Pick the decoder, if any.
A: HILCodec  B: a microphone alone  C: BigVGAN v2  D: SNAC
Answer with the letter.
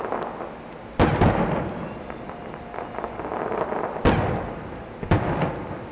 B